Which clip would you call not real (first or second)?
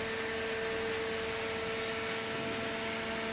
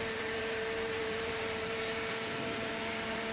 second